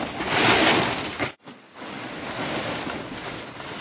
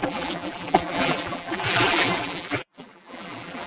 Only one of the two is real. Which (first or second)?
first